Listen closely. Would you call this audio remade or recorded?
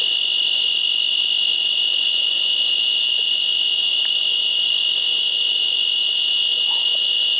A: remade